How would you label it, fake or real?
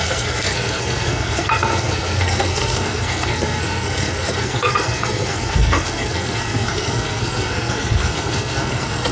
fake